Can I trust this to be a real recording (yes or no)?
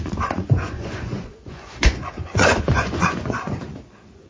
no